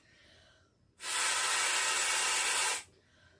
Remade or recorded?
recorded